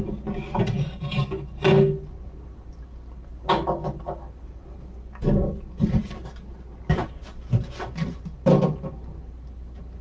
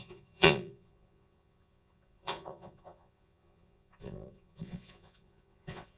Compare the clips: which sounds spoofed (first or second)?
second